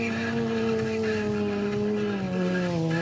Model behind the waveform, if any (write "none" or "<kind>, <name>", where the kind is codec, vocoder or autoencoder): none